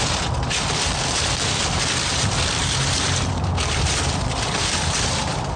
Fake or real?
fake